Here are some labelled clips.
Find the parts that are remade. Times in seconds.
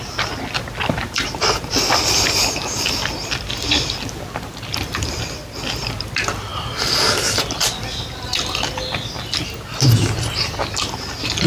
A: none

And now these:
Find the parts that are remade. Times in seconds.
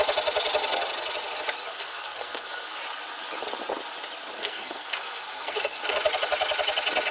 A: 1.7-2.8 (codec, SNAC); 4.4-5.9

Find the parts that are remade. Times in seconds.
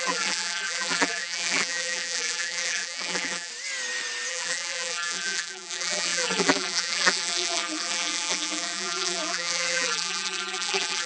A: 0.0-3.5 (vocoder, BigVGAN v2); 4.3-11.1